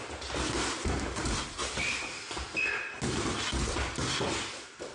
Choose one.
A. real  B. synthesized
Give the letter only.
A